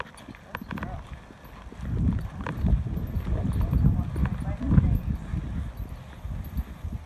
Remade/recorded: recorded